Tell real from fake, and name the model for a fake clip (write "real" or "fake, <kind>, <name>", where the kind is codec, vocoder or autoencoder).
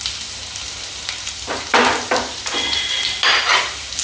real